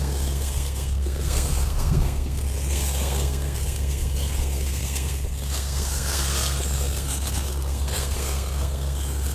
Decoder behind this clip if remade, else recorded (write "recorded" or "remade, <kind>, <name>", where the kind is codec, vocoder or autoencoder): remade, codec, SNAC